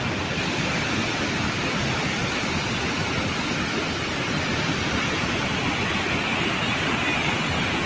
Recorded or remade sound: recorded